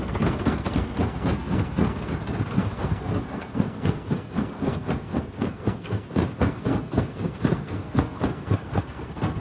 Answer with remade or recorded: remade